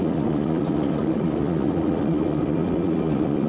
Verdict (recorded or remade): remade